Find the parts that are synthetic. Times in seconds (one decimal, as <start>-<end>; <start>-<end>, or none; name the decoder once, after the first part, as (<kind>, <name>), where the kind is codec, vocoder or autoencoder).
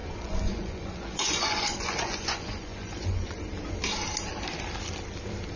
0.0-3.4 (vocoder, Vocos)